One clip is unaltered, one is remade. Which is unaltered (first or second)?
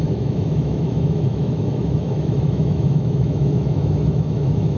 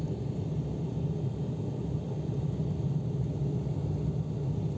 second